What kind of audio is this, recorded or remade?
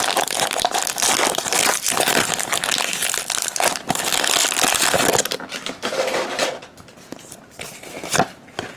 recorded